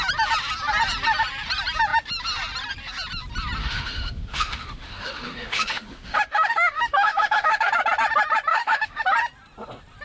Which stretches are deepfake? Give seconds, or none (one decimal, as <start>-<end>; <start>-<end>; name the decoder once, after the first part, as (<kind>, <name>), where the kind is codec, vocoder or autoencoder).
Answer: 3.6-7.7 (autoencoder, DAC-VAE); 8.5-9.0